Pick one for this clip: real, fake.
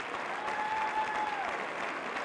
real